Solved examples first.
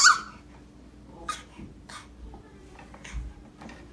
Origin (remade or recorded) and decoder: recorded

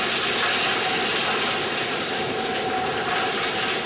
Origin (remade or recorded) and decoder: recorded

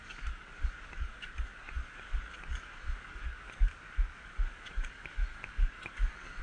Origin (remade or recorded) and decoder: remade, codec, DAC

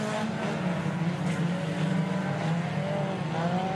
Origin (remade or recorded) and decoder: recorded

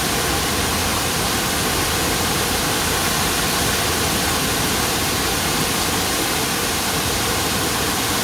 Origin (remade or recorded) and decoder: recorded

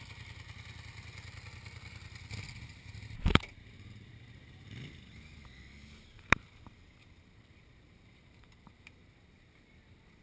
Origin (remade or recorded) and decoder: recorded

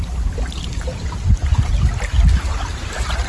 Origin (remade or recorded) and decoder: recorded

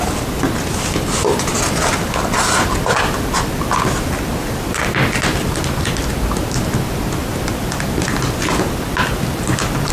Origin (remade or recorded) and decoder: recorded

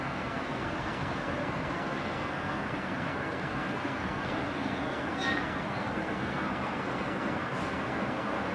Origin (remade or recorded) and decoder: remade, codec, SNAC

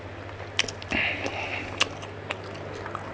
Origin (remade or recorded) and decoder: recorded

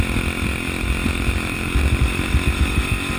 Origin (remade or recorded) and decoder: recorded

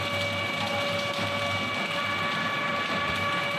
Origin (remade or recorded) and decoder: recorded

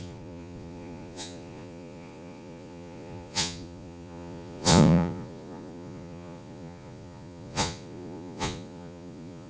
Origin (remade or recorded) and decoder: remade, vocoder, Vocos